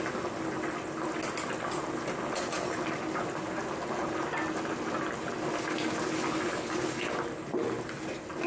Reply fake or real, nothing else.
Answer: real